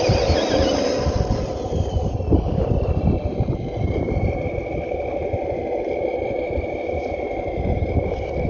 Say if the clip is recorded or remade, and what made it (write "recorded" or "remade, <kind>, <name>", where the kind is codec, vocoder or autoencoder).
recorded